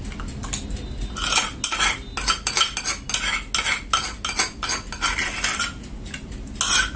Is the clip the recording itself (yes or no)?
yes